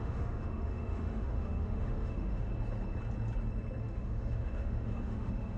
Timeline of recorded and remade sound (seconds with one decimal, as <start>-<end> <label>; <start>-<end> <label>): 0.0-2.5 remade; 2.5-3.8 recorded; 3.8-5.6 remade